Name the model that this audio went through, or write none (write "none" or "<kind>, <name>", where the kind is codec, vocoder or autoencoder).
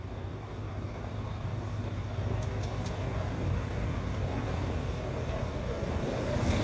codec, DAC